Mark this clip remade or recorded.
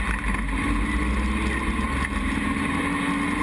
recorded